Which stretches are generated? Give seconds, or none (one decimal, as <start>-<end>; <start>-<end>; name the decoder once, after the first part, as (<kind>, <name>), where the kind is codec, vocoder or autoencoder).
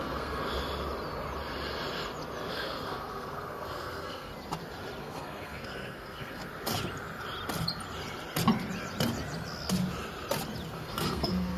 0.0-0.4 (codec, SNAC); 2.5-4.3; 5.0-6.5; 10.8-11.6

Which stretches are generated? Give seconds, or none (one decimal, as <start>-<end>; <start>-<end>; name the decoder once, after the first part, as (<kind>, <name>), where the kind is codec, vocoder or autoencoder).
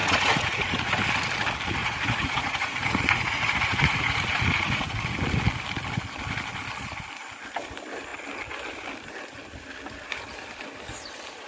0.0-0.9 (vocoder, Vocos); 1.8-5.2